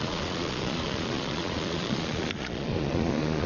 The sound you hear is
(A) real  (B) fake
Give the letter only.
B